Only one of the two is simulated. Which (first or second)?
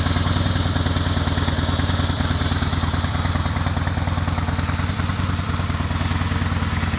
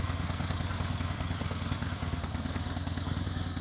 second